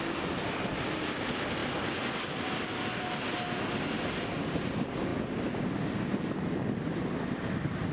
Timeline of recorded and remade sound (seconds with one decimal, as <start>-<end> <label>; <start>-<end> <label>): 0.0-7.9 recorded